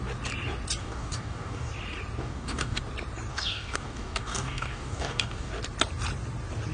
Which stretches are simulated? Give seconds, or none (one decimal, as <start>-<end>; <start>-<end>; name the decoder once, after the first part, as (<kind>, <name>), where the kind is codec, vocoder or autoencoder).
0.8-1.7 (codec, DAC); 2.2-2.8; 3.3-5.5